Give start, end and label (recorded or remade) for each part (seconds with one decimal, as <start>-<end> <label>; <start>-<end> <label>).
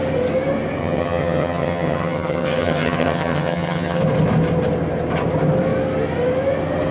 0.0-0.8 recorded; 0.8-4.0 remade; 4.0-6.9 recorded